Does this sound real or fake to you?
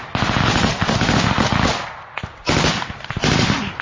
real